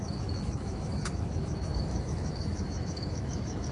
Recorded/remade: remade